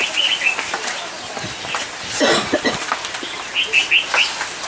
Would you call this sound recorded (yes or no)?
yes